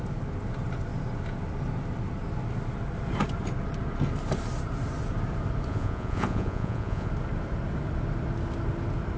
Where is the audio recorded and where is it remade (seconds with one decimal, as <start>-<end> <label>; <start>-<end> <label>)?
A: 0.0-5.7 recorded; 5.7-7.1 remade; 7.1-9.2 recorded